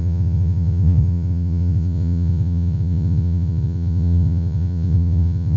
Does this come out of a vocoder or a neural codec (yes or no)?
yes